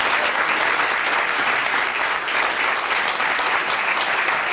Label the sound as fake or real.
real